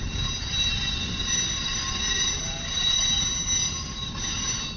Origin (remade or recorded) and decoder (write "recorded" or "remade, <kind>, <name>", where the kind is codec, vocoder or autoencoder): recorded